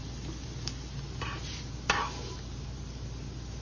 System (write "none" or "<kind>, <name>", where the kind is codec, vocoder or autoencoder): none